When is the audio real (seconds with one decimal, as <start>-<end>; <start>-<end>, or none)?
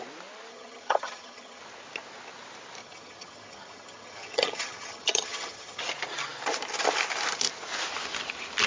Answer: 0.0-0.5; 1.6-2.8; 5.8-8.7